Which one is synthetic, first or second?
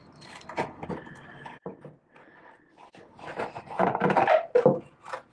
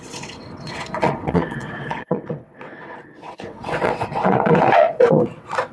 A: second